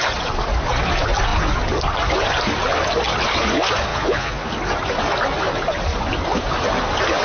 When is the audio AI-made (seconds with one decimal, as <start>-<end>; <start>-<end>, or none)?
3.9-4.5